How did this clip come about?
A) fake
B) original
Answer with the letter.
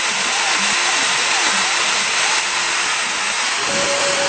B